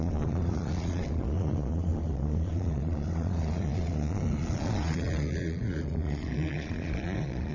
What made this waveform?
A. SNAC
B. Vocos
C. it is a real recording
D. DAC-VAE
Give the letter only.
B